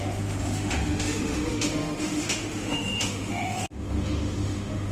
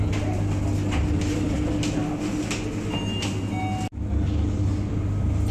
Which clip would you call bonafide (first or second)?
second